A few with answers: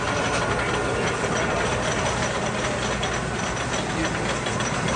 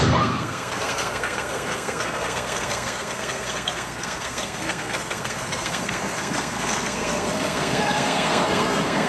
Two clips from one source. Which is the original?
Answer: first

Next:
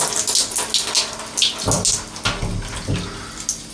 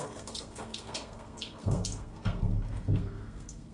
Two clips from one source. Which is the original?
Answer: first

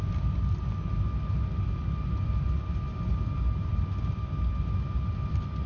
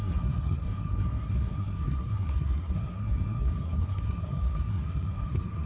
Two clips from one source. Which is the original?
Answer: first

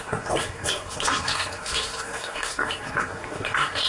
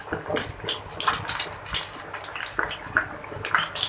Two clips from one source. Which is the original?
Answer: second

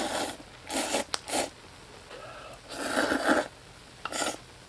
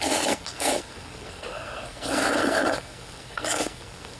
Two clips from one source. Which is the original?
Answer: first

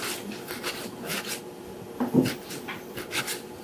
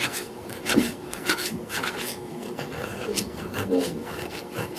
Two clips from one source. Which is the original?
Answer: first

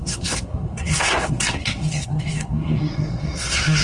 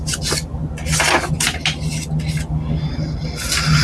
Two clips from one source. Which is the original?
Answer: second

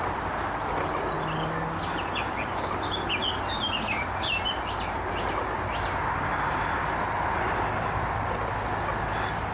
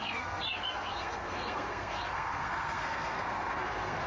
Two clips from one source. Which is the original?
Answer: first